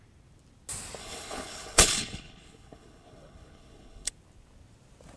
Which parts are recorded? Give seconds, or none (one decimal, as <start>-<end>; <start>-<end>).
0.0-1.0; 4.1-5.2